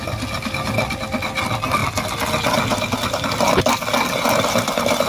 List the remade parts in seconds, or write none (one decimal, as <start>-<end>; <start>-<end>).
none